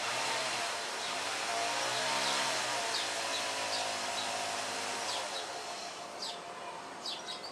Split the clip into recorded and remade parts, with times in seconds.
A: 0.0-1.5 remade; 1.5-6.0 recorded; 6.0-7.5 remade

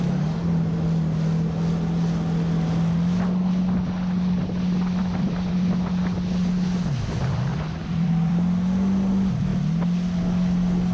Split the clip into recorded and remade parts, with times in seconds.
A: 0.0-5.0 recorded; 5.0-5.5 remade; 5.5-7.5 recorded; 7.5-8.3 remade; 8.3-10.9 recorded

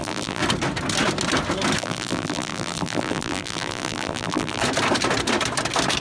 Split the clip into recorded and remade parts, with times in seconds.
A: 0.0-0.4 remade; 0.4-1.8 recorded; 1.8-4.6 remade; 4.6-6.0 recorded

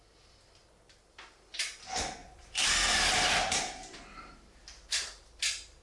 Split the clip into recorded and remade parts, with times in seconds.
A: 0.0-2.2 recorded; 2.2-5.8 remade